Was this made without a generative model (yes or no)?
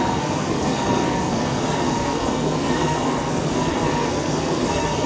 no